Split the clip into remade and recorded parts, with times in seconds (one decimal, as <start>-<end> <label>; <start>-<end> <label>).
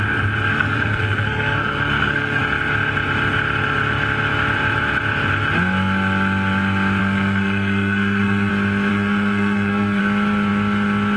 0.0-0.5 recorded; 0.5-2.4 remade; 2.4-7.0 recorded; 7.0-8.5 remade; 8.5-8.9 recorded; 8.9-10.0 remade; 10.0-11.2 recorded